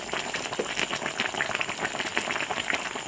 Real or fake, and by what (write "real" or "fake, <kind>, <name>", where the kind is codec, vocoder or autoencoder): real